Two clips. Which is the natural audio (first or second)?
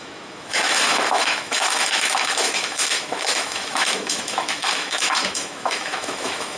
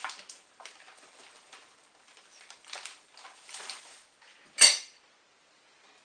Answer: second